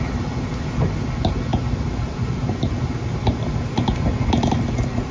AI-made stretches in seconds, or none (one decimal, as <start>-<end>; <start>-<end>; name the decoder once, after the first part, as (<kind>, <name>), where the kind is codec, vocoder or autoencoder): none